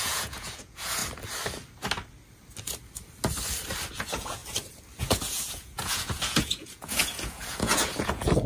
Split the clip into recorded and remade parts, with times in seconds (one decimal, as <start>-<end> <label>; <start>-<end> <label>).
0.0-1.0 remade; 1.0-3.9 recorded; 3.9-4.4 remade; 4.4-5.0 recorded; 5.0-8.5 remade